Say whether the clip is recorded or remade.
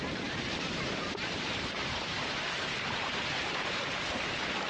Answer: remade